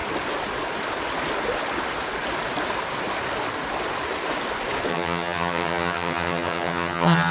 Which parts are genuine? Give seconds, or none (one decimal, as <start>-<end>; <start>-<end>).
0.0-4.9